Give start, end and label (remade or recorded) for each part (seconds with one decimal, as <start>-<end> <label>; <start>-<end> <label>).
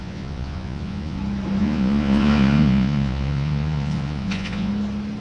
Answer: 0.0-1.2 remade; 1.2-1.6 recorded; 1.6-4.7 remade; 4.7-5.2 recorded